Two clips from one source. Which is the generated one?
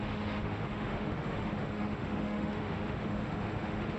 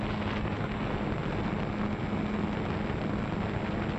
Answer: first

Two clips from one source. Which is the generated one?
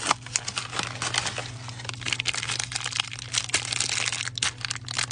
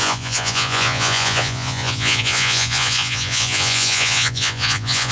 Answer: second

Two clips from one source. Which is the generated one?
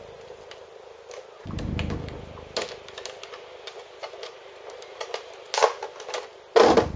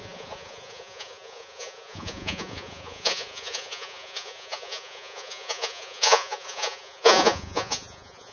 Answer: second